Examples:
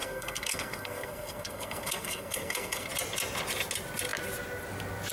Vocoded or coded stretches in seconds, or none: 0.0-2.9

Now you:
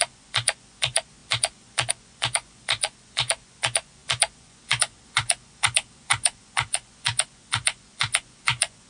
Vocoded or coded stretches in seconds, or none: 0.0-8.9

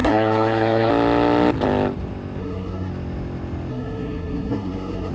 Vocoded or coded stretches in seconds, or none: 0.0-0.9; 2.4-2.9; 3.7-5.1

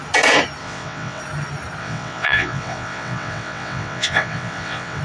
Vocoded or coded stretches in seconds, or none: 0.6-1.2; 1.8-5.0